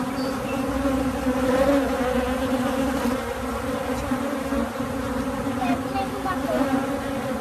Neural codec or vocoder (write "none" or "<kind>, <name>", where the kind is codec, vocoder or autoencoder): none